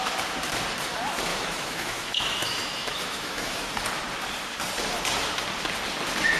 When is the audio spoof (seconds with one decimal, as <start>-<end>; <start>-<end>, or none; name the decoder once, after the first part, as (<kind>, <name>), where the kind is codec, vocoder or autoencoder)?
1.3-3.7 (autoencoder, DAC-VAE)